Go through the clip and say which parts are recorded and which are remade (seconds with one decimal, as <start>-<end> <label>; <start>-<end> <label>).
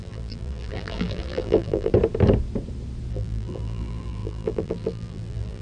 0.0-1.9 remade; 1.9-3.1 recorded; 3.1-5.6 remade